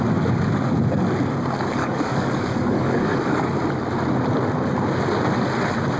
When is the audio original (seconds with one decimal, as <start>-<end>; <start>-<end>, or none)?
0.0-1.8; 3.2-6.0